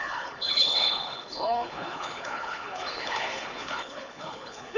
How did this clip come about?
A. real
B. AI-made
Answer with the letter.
B